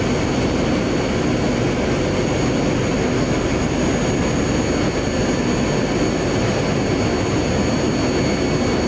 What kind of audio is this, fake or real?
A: real